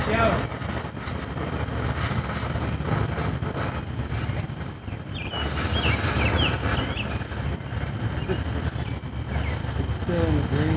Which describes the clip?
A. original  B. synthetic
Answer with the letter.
A